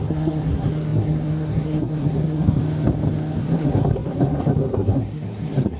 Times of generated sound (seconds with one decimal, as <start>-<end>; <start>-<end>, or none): 0.0-2.6; 3.4-5.8